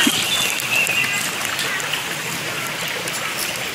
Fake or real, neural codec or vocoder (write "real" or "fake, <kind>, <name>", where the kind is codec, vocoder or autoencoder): real